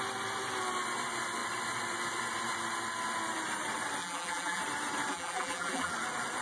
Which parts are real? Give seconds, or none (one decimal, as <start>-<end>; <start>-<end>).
0.0-4.0; 4.6-5.1; 5.9-6.4